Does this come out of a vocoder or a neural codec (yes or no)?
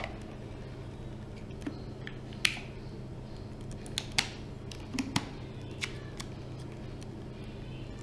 no